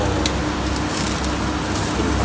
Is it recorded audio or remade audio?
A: recorded